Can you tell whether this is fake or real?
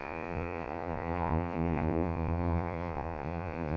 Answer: fake